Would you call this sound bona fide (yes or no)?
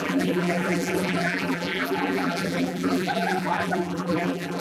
no